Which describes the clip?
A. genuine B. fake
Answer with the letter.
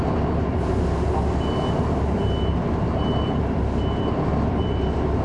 A